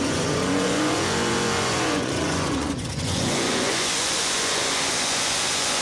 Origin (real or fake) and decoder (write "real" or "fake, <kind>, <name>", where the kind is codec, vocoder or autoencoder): fake, vocoder, Vocos